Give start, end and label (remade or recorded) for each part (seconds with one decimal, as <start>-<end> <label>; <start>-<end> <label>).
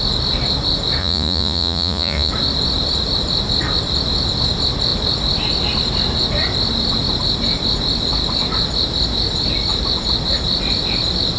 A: 0.0-1.0 recorded; 1.0-2.3 remade; 2.3-11.4 recorded